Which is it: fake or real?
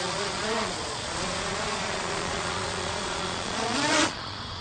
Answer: fake